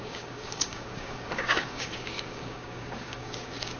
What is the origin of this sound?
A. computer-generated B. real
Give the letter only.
A